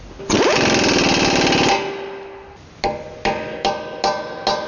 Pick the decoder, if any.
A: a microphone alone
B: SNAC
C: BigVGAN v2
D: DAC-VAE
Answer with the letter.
A